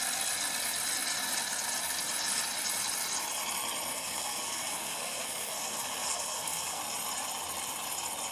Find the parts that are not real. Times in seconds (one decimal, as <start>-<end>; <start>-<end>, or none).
3.9-6.8